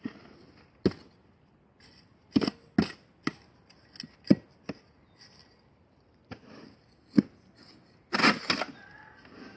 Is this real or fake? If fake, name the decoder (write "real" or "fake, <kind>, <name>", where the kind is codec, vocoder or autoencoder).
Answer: real